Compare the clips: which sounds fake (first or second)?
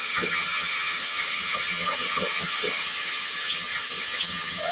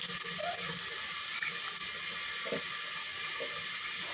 first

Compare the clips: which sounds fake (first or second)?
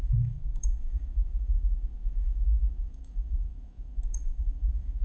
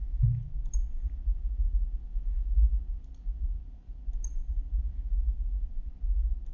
first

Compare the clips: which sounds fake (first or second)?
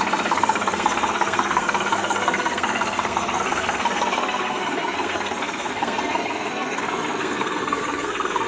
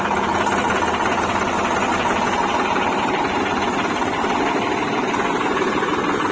first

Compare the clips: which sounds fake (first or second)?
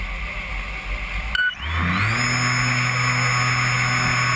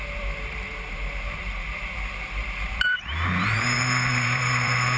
second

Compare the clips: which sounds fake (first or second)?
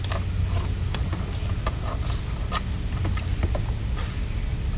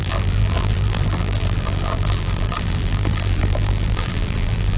second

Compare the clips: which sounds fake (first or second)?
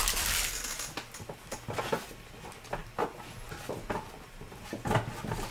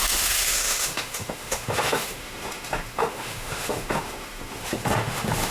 second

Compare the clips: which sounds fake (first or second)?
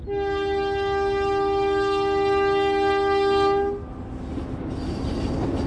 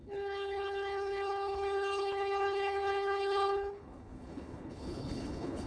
second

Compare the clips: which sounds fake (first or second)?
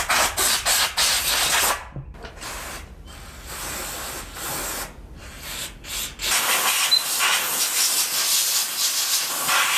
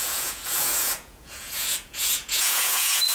second